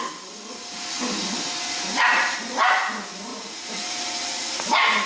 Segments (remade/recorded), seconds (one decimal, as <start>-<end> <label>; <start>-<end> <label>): 0.0-2.1 recorded; 2.1-2.7 remade; 2.7-3.3 recorded; 3.3-4.4 remade; 4.4-5.1 recorded